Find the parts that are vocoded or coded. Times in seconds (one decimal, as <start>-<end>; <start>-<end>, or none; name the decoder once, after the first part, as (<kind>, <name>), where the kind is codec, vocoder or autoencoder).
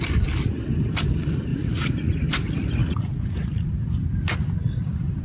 1.5-2.1 (vocoder, Vocos); 2.8-3.7